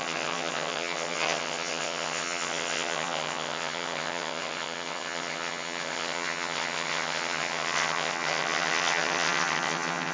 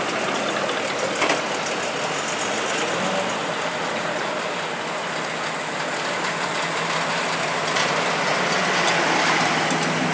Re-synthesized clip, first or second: first